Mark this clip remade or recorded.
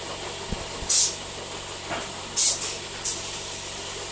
recorded